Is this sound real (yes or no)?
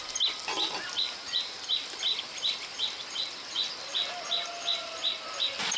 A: yes